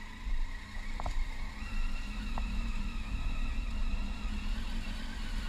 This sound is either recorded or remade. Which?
recorded